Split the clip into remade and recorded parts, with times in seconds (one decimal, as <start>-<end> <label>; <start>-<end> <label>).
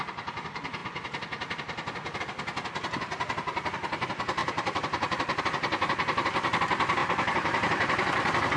0.0-4.4 recorded; 4.4-5.4 remade; 5.4-7.0 recorded; 7.0-8.6 remade